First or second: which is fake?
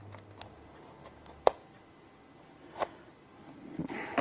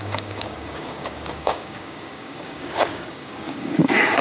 second